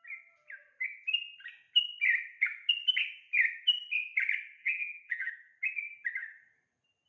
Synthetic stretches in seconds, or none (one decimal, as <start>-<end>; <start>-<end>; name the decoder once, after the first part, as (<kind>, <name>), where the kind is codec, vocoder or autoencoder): 4.6-5.3 (vocoder, BigVGAN v2)